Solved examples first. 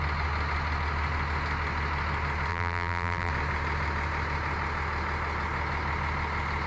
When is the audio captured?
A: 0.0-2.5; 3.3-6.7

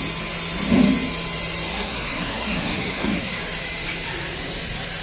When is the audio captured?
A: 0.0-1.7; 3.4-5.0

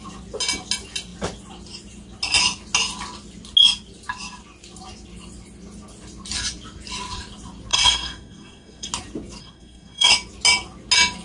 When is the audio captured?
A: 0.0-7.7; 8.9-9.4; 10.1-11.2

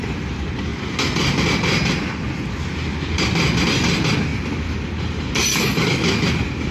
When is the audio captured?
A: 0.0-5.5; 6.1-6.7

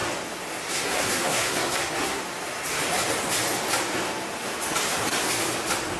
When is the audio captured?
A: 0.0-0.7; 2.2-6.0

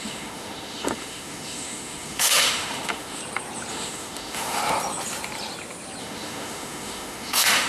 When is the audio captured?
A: 3.2-3.7; 4.6-6.0

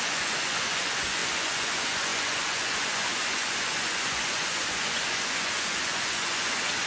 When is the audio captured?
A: none